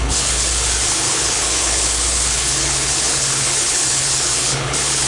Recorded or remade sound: remade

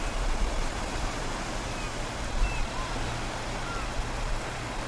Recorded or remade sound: recorded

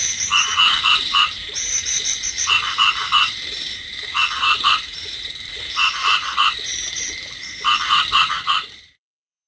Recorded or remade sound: remade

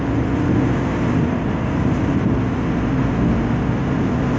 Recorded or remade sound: recorded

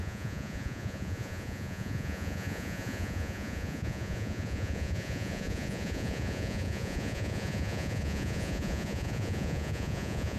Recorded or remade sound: remade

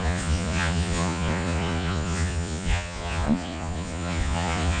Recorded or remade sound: remade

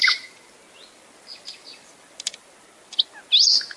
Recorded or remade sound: recorded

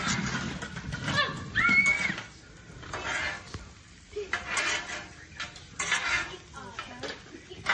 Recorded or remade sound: recorded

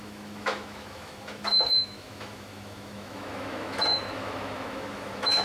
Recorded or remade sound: remade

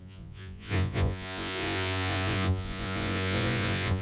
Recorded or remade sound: remade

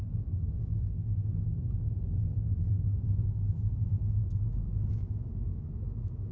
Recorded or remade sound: remade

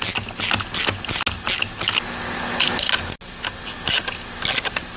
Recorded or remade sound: recorded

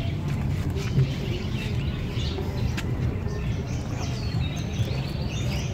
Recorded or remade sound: recorded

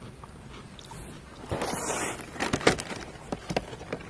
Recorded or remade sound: recorded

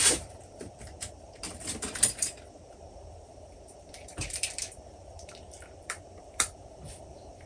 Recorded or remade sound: remade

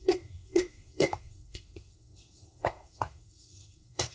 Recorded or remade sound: remade